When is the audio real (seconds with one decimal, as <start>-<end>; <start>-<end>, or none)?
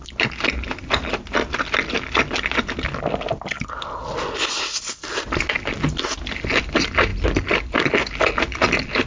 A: 0.0-9.1